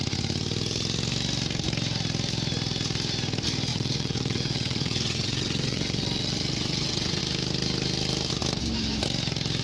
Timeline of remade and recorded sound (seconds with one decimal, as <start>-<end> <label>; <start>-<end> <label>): 0.0-3.7 recorded; 3.7-7.2 remade; 7.2-9.6 recorded